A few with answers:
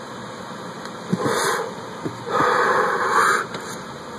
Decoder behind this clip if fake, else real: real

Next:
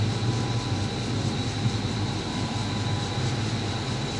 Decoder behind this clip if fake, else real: real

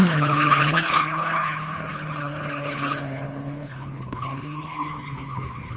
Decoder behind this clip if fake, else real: fake, codec, HILCodec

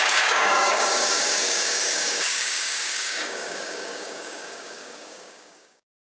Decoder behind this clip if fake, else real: fake, codec, DAC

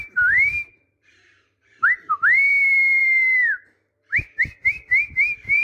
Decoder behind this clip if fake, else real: fake, vocoder, BigVGAN v2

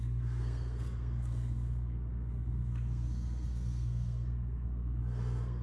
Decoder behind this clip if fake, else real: fake, codec, SNAC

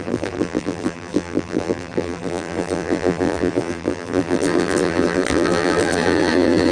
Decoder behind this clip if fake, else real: fake, vocoder, BigVGAN v2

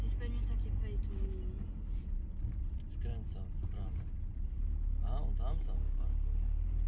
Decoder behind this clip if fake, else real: real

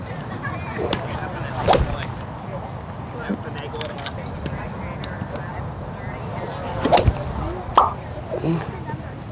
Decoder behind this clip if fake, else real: real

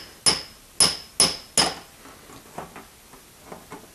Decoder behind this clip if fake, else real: real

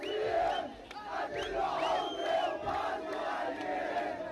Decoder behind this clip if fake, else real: real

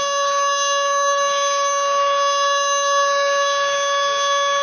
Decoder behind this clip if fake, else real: fake, codec, DAC